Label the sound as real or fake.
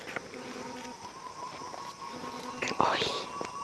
real